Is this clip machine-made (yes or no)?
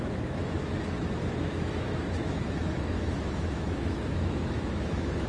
yes